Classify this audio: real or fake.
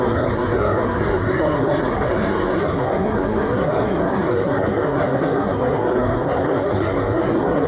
fake